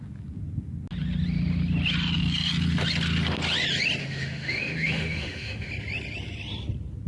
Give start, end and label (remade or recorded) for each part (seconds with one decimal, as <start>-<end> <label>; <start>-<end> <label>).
0.0-4.0 recorded; 4.0-5.7 remade; 5.7-7.1 recorded